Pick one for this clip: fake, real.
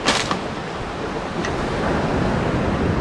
real